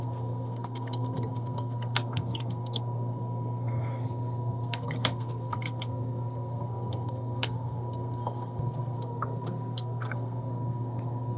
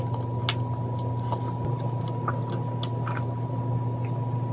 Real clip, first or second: second